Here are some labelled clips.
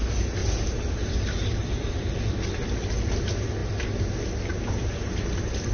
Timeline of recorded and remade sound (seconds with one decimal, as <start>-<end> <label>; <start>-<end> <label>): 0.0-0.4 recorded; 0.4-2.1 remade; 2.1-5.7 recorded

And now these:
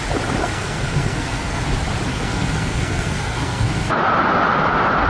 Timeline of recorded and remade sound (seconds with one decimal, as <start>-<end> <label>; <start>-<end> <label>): 0.0-0.4 recorded; 0.4-1.6 remade; 1.6-2.1 recorded; 2.1-3.9 remade; 3.9-5.1 recorded

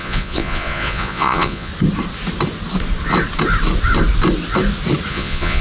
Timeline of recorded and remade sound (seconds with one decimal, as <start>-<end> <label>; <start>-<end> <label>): 0.0-1.7 remade; 1.7-5.1 recorded; 5.1-5.6 remade

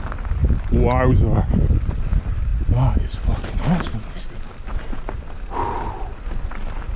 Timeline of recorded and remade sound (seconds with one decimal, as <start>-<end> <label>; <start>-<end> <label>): 0.0-7.0 recorded

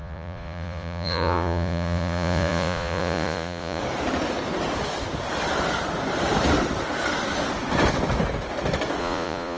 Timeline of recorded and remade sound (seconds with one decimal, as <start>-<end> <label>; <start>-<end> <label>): 0.0-3.8 remade; 3.8-9.0 recorded; 9.0-9.6 remade